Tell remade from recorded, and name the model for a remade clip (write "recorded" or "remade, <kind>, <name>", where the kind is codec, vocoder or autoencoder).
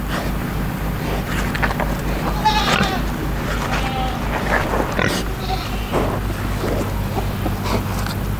recorded